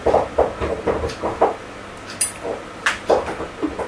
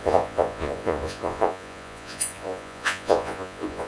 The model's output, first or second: second